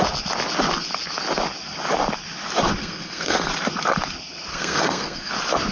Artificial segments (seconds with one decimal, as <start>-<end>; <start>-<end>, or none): 2.8-3.5; 4.5-5.3